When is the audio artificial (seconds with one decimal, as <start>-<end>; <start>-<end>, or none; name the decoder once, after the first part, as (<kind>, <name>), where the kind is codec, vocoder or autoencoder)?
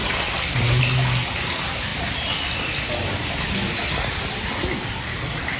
none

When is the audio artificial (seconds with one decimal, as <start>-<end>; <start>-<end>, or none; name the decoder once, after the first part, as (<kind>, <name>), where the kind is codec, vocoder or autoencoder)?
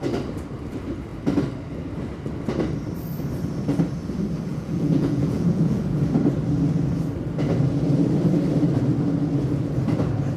4.5-6.0 (vocoder, Vocos)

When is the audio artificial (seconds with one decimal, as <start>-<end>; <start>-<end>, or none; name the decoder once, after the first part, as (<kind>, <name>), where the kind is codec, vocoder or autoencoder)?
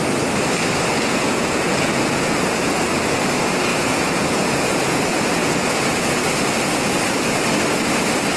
0.9-2.8 (vocoder, Vocos); 3.7-5.0; 5.4-6.2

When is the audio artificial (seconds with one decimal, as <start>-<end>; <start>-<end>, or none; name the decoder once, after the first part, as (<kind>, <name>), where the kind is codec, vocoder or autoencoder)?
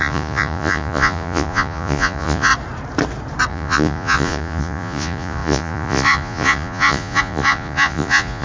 0.0-2.5 (vocoder, Vocos); 3.5-8.4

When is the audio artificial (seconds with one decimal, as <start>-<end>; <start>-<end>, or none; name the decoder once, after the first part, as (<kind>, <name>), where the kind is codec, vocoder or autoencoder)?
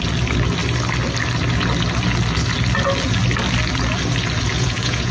4.5-5.1 (vocoder, Vocos)